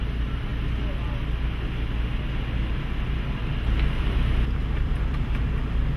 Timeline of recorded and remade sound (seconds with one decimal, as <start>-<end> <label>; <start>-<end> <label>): 0.0-4.6 recorded; 4.6-5.5 remade; 5.5-6.0 recorded